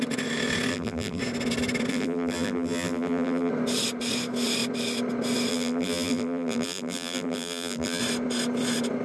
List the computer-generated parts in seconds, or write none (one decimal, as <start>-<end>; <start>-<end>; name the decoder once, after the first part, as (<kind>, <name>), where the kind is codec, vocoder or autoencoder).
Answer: 0.7-1.2 (vocoder, BigVGAN v2); 1.9-3.5; 5.5-8.0